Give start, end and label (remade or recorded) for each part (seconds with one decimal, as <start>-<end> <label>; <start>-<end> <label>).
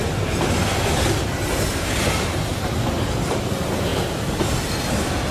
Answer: 0.0-5.3 recorded